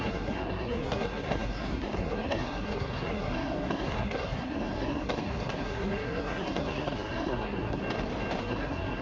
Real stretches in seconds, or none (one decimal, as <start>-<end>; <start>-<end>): 7.8-8.4